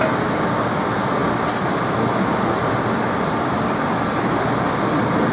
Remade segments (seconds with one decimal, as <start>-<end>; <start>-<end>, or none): none